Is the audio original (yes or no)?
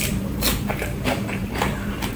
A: no